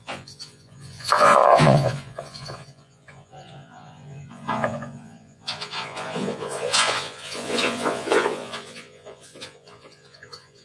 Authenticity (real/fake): fake